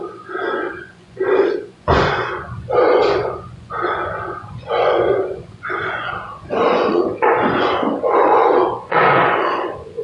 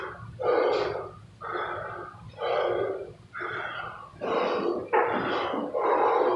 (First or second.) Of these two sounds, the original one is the second